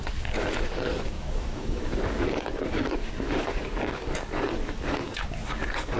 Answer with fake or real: fake